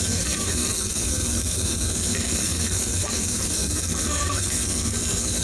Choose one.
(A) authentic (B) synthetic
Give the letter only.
B